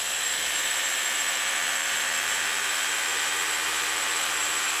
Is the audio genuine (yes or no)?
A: no